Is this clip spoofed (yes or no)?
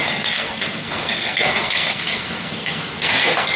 yes